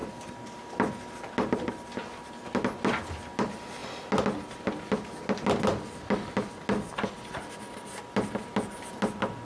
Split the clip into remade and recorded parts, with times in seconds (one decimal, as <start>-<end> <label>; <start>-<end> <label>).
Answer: 0.0-9.4 recorded